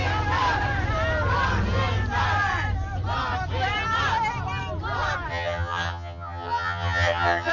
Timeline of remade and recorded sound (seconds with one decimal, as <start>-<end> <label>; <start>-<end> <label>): 0.0-5.3 recorded; 5.3-7.5 remade